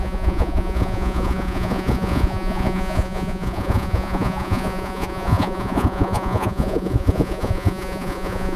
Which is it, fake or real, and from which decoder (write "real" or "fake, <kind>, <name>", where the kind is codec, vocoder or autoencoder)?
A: fake, vocoder, Vocos